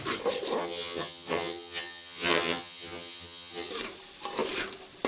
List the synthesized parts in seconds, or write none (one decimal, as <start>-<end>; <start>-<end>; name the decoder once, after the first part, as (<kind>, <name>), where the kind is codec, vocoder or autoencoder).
0.6-3.7 (vocoder, HiFi-GAN)